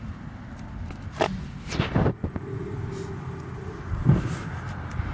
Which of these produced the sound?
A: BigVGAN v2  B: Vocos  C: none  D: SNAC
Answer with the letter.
C